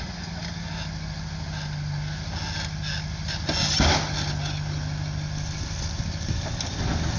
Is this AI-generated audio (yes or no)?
no